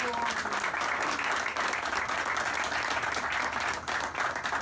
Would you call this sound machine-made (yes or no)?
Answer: no